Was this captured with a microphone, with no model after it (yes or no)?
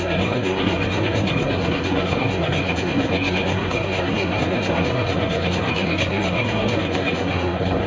no